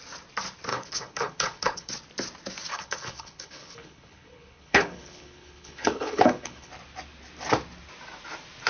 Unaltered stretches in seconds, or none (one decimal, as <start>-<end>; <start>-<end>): 0.0-0.7; 1.9-2.7; 6.7-8.7